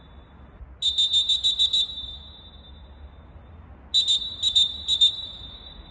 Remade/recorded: recorded